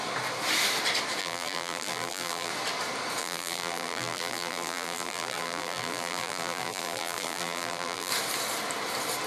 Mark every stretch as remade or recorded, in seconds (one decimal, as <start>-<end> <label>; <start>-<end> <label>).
0.0-1.2 recorded; 1.2-2.5 remade; 2.5-3.2 recorded; 3.2-8.1 remade; 8.1-9.3 recorded